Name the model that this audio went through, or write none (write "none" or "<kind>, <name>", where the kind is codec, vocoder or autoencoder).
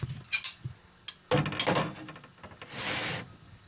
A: none